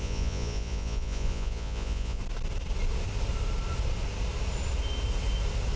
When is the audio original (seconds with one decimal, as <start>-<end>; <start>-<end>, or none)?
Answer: 2.2-5.8